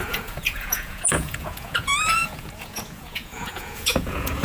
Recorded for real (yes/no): no